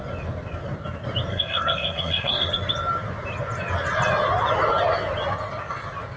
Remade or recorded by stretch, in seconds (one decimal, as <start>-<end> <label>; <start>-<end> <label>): 0.0-1.3 recorded; 1.3-2.5 remade; 2.5-6.2 recorded